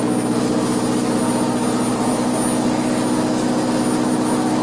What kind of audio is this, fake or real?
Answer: real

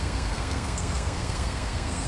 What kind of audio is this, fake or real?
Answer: fake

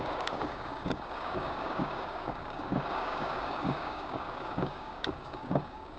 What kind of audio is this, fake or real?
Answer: fake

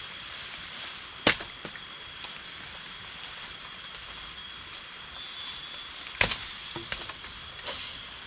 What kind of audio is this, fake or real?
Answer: fake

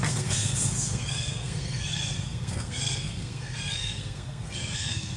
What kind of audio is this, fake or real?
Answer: fake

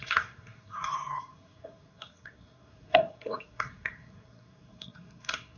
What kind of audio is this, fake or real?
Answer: fake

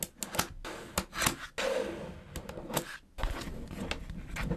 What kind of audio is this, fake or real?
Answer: real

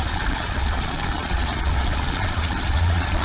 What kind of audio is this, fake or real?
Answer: fake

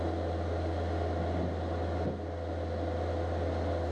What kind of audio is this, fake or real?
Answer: real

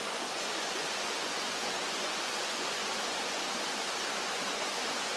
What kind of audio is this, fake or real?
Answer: fake